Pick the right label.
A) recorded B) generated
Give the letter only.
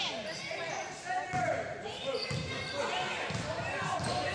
A